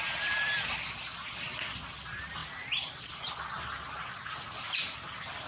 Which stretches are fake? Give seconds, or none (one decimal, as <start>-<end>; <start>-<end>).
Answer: none